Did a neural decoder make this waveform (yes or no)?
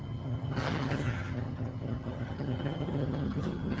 yes